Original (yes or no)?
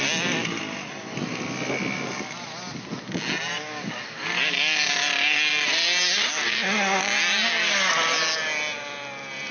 yes